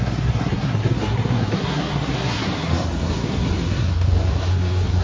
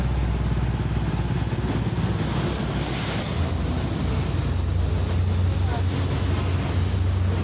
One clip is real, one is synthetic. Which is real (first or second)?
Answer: second